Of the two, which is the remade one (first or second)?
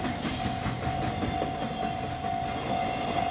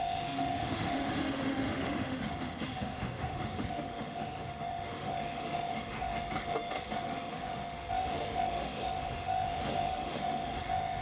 second